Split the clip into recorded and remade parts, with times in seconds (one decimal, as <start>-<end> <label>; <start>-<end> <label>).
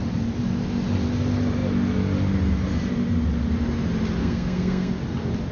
0.0-4.2 recorded; 4.2-5.0 remade; 5.0-5.5 recorded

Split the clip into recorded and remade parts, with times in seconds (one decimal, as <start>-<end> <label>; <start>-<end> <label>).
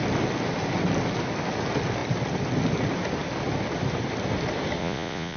0.0-4.8 recorded; 4.8-5.4 remade